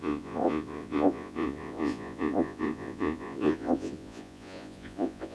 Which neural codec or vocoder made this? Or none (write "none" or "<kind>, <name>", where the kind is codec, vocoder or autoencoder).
vocoder, Vocos